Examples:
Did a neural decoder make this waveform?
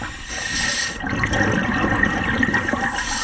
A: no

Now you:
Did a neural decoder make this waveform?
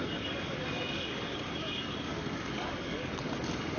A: yes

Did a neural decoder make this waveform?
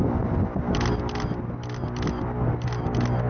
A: no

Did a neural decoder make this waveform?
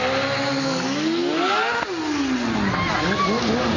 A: no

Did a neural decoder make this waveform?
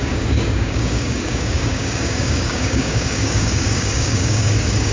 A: yes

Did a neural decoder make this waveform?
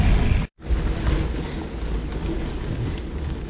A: no